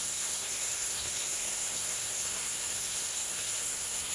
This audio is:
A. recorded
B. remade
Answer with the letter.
B